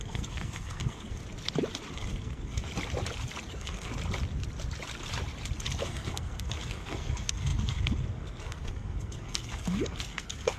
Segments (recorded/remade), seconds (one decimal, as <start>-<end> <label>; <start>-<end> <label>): 0.0-1.2 remade; 1.2-1.9 recorded; 1.9-2.7 remade; 2.7-3.5 recorded; 3.5-3.9 remade; 3.9-5.8 recorded; 5.8-10.6 remade